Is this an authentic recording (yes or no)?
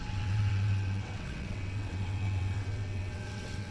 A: no